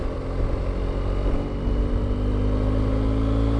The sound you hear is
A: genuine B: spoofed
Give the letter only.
A